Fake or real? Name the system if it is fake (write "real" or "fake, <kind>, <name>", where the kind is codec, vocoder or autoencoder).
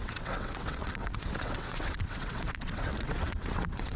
fake, vocoder, WaveNeXt